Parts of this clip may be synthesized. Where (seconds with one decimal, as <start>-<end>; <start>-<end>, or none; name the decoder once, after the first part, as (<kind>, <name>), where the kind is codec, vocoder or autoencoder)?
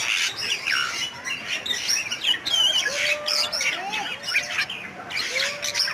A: none